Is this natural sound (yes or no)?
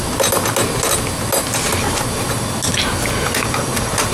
yes